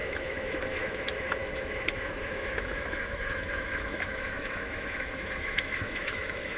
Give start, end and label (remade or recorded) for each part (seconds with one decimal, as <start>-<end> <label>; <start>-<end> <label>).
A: 0.0-6.6 remade